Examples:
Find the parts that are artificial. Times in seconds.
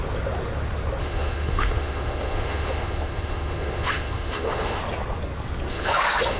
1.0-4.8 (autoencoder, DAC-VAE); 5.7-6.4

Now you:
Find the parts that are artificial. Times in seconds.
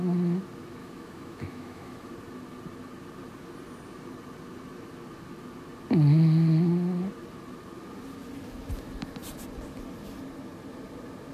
0.8-2.1 (autoencoder, DAC-VAE)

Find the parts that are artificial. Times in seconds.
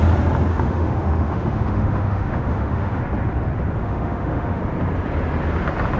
0.5-3.0 (autoencoder, DAC-VAE); 3.8-4.6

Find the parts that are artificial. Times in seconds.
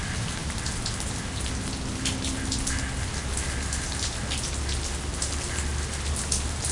none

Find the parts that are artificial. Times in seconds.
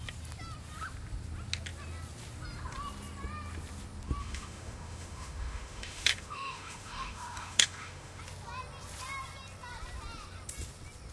4.2-8.2 (autoencoder, DAC-VAE)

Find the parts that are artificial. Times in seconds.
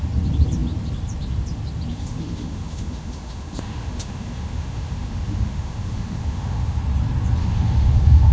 1.9-6.8 (autoencoder, DAC-VAE); 7.4-8.3